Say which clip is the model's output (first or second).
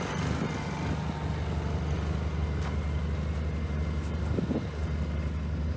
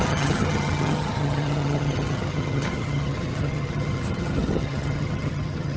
second